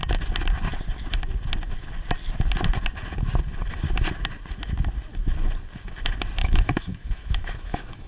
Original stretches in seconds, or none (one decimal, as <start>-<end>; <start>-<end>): 0.0-6.4